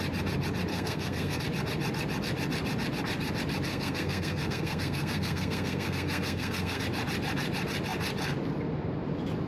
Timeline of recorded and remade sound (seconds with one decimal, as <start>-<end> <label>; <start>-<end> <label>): 0.0-0.7 recorded; 0.7-1.4 remade; 1.4-3.7 recorded; 3.7-6.8 remade; 6.8-9.5 recorded